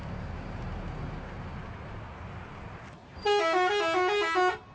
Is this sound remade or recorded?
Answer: recorded